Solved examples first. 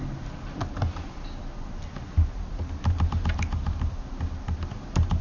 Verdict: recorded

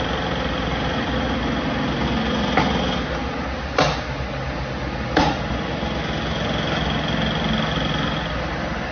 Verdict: recorded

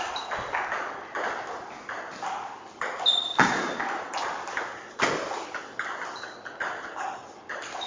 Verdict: recorded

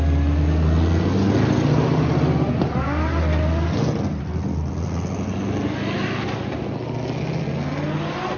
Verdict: recorded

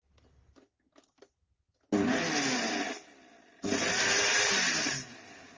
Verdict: recorded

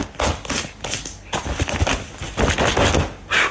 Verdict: recorded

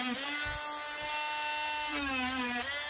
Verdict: recorded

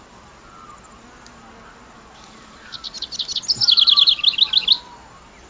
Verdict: recorded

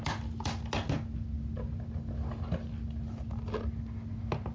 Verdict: recorded